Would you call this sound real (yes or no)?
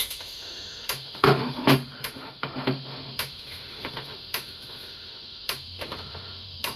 no